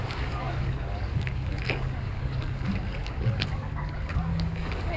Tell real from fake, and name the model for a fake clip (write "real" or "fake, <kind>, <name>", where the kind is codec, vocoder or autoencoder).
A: fake, codec, DAC